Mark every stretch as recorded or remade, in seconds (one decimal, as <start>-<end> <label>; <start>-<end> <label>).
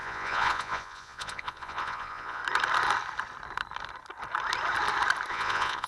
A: 0.0-2.4 remade; 2.4-5.3 recorded; 5.3-5.9 remade